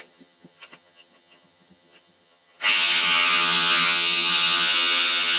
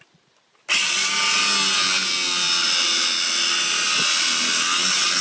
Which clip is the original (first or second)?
second